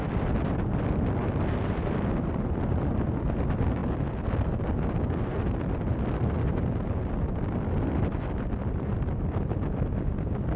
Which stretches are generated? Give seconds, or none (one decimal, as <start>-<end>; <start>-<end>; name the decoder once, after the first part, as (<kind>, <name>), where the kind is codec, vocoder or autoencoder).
none